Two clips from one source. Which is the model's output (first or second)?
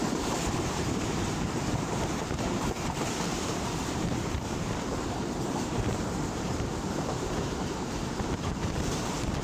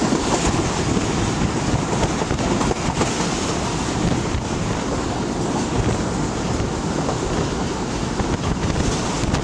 first